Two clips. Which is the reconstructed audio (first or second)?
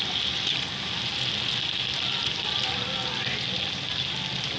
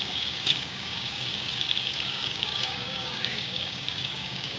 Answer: second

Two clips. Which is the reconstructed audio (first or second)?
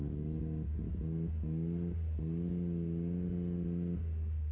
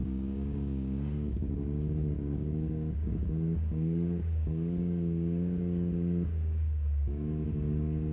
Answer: second